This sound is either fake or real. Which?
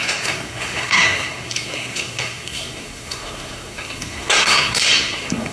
fake